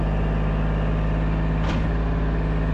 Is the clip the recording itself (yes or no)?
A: yes